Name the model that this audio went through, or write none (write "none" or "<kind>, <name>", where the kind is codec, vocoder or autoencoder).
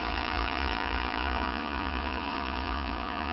vocoder, Vocos